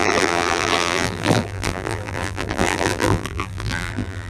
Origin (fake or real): fake